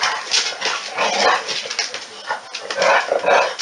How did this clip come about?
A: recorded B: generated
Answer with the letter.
A